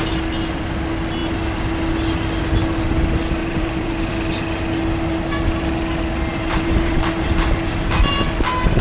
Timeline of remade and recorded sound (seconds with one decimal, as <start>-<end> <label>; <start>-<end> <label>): 0.0-3.4 recorded; 3.4-4.1 remade; 4.1-6.3 recorded; 6.3-8.1 remade; 8.1-8.8 recorded